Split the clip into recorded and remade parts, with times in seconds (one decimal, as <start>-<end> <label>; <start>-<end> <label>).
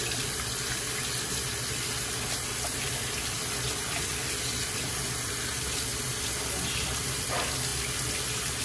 0.0-8.6 recorded